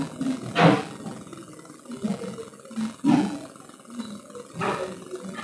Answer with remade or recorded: recorded